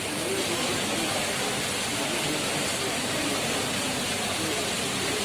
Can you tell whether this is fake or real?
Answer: real